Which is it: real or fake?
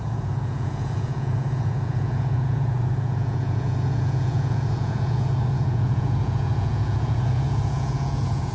fake